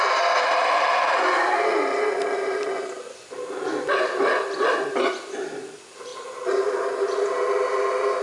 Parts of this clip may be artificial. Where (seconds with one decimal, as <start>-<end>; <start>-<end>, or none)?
3.9-4.6; 6.1-6.9